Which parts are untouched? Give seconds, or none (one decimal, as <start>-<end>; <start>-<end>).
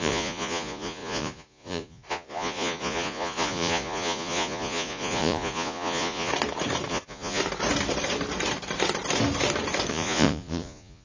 6.3-6.9; 7.4-9.9